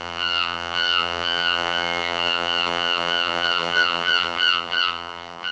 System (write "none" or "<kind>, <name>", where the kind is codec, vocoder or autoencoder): vocoder, BigVGAN v2